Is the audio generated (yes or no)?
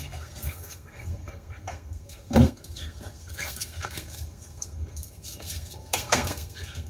yes